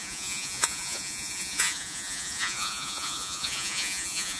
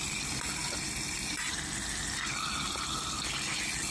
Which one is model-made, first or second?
first